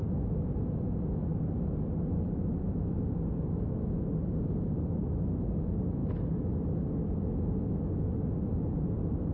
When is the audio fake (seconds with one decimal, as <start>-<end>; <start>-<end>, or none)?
none